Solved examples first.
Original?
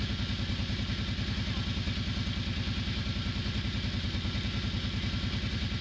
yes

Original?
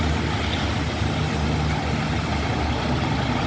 yes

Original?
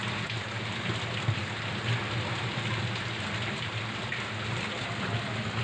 yes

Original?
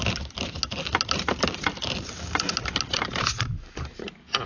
yes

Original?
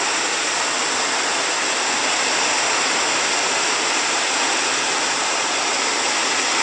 yes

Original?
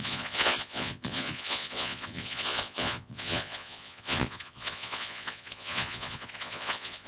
no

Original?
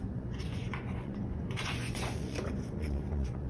no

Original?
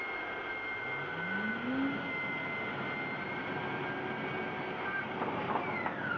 yes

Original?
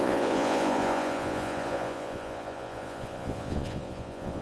no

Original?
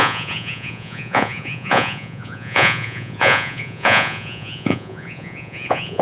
no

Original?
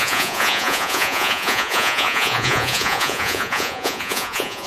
no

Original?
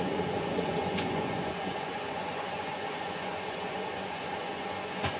no